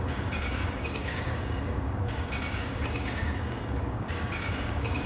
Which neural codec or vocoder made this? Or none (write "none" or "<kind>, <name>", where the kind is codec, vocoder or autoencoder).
codec, DAC